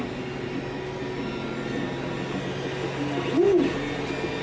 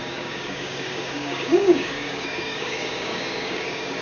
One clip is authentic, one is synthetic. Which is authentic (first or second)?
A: first